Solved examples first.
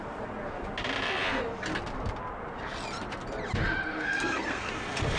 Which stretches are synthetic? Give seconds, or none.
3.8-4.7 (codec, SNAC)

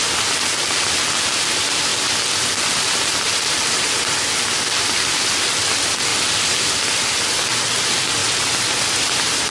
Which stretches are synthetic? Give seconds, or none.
6.1-6.8 (vocoder, BigVGAN v2); 8.2-9.5

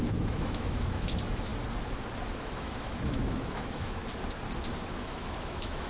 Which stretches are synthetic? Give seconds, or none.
0.0-1.5 (autoencoder, DAC-VAE); 2.4-4.0; 4.9-5.9

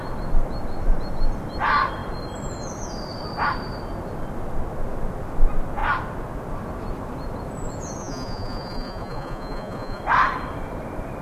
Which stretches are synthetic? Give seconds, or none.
8.0-10.0 (vocoder, Vocos)